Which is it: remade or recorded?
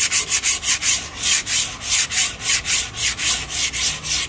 recorded